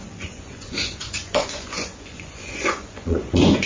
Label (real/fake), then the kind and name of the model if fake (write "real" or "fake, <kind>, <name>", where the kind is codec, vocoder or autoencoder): fake, vocoder, Vocos